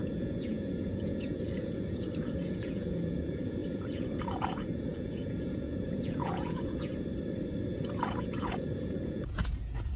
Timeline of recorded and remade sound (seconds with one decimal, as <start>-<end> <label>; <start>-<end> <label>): 0.0-6.9 remade; 6.9-7.7 recorded; 7.7-10.0 remade